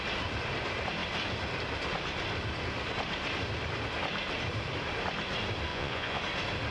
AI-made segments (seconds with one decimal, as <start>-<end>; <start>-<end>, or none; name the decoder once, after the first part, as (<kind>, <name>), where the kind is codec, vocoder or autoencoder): 5.7-6.2 (vocoder, Vocos)

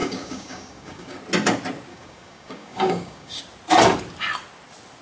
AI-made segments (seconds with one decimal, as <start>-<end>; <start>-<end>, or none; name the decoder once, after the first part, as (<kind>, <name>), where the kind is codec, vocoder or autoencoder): 0.0-1.2 (codec, DAC); 1.9-3.4

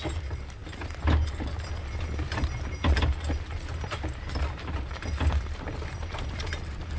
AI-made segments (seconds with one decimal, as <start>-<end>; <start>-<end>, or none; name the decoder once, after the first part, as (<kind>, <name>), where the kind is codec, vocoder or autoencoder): none

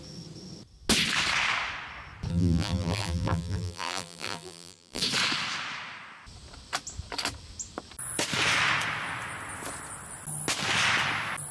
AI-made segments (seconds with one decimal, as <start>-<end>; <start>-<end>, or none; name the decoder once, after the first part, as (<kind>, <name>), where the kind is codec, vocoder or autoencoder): 2.3-5.0 (vocoder, BigVGAN v2)

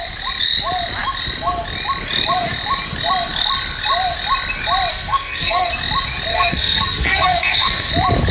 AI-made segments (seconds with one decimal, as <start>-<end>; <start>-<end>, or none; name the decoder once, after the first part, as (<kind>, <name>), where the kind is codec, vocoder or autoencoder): 4.9-5.7 (codec, SNAC); 6.3-7.9

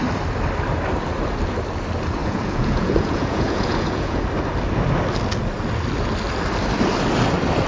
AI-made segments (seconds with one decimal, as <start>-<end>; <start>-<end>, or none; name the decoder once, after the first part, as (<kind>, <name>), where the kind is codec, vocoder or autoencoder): 2.2-4.2 (vocoder, Vocos)

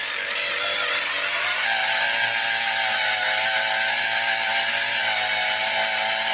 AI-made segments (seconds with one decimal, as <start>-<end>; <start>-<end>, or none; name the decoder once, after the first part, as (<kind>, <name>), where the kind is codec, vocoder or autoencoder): none

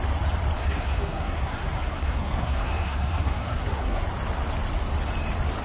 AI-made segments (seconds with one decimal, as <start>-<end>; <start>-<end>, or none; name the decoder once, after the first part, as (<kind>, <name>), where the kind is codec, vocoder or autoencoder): 0.6-4.0 (codec, SNAC)